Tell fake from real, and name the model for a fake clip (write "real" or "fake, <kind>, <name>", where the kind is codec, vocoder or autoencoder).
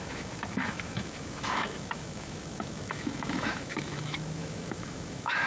fake, autoencoder, DAC-VAE